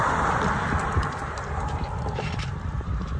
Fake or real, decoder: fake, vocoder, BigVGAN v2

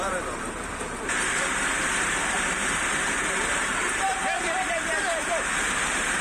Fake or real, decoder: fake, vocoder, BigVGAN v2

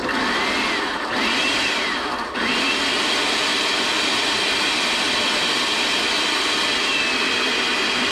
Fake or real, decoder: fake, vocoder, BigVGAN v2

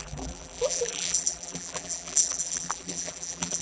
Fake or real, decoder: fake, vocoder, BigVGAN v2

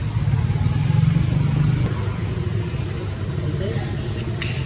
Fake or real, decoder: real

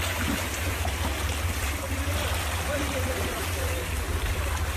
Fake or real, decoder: real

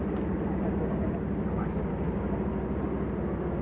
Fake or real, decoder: real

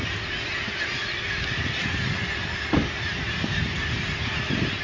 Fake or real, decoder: real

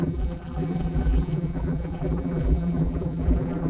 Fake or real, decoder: fake, vocoder, BigVGAN v2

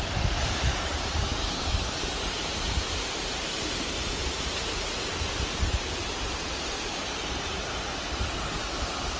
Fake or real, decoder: fake, vocoder, BigVGAN v2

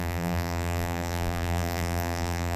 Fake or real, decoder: fake, vocoder, BigVGAN v2